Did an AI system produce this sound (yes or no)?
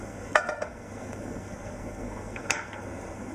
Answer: yes